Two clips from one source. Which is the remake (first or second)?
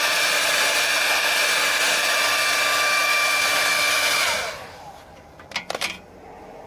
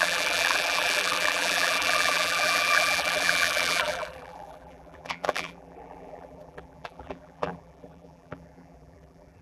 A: second